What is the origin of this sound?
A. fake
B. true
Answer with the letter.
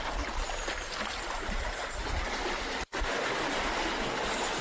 B